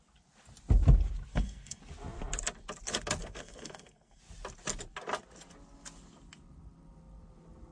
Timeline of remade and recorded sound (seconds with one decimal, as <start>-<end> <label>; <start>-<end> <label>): 0.0-1.3 recorded; 1.3-1.8 remade; 1.8-3.2 recorded; 3.2-4.2 remade; 4.2-7.7 recorded